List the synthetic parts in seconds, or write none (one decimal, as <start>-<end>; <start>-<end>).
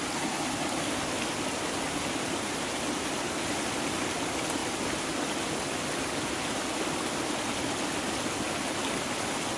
none